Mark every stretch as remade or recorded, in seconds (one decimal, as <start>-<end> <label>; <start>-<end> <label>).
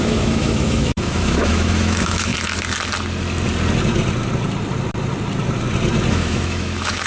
0.0-2.3 remade; 2.3-6.1 recorded; 6.1-7.1 remade